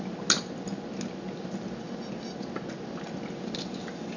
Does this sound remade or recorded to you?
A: recorded